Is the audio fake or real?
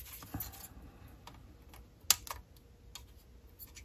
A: real